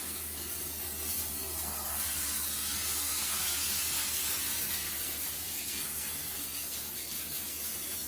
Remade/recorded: remade